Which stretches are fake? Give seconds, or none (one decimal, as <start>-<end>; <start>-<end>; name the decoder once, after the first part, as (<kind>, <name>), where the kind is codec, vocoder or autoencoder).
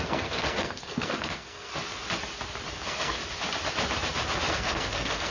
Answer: 0.0-1.7 (codec, SNAC); 2.7-3.2; 4.5-5.3